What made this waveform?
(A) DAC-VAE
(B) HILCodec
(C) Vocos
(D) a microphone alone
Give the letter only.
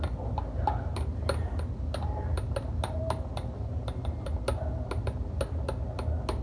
D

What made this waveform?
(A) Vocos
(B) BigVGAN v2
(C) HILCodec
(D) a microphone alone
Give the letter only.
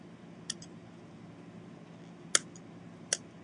D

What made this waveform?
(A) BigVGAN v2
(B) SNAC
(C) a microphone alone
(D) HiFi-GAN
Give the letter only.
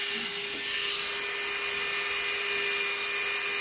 C